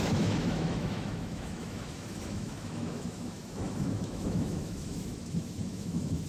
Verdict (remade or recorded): remade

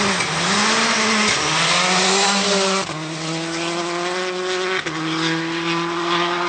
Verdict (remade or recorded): recorded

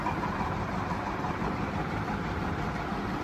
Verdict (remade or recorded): recorded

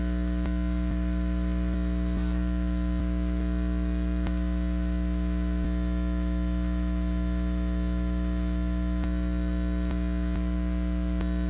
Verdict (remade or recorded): remade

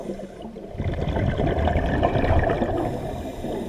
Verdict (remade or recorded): recorded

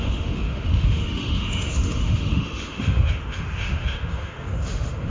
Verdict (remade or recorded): remade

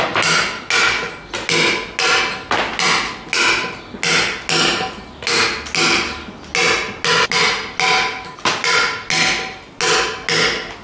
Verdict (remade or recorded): recorded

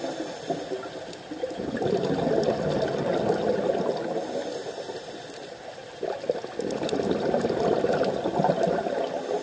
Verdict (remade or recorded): recorded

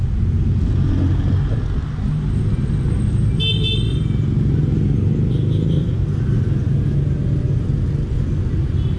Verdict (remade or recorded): recorded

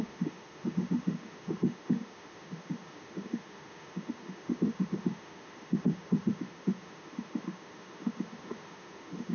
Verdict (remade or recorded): remade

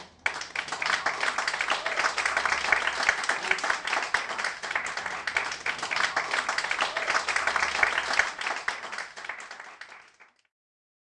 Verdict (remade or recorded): recorded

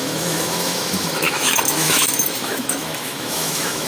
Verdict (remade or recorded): remade